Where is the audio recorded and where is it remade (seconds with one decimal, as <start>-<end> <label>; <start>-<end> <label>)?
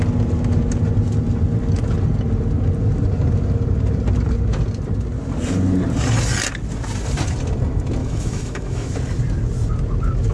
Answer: 0.0-8.0 recorded; 8.0-8.9 remade; 8.9-10.3 recorded